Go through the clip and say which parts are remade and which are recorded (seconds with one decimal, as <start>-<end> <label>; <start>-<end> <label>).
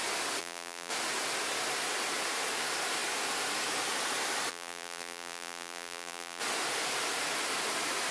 0.0-0.4 recorded; 0.4-0.9 remade; 0.9-4.5 recorded; 4.5-6.4 remade; 6.4-8.1 recorded